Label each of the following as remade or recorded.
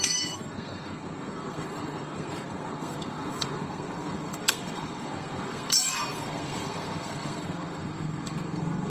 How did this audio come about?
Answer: remade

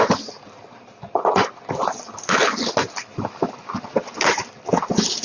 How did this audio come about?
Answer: recorded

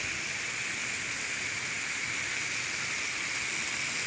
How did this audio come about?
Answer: recorded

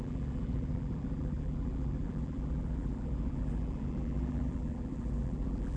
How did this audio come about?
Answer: remade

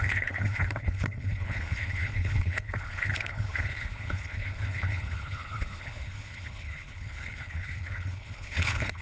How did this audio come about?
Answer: remade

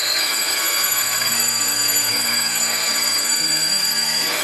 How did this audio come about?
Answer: remade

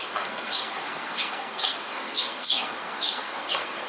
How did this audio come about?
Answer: remade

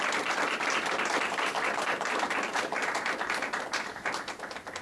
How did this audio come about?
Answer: remade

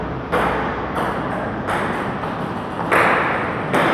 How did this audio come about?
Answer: recorded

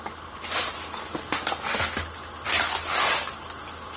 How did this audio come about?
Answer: recorded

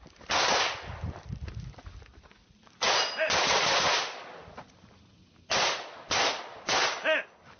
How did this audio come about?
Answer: recorded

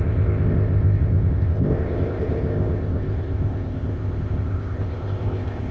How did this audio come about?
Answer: remade